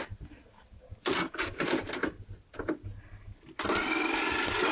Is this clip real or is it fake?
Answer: real